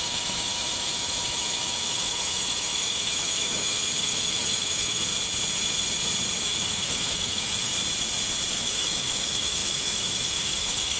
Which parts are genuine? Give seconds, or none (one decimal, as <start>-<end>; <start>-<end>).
5.1-6.4; 7.7-8.5